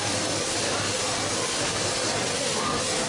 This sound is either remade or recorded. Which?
recorded